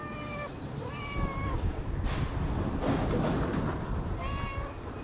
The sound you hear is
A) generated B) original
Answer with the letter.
B